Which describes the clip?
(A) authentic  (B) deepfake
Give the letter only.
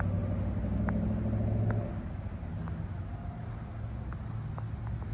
A